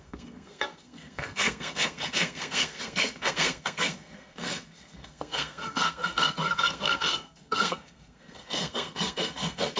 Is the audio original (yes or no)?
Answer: no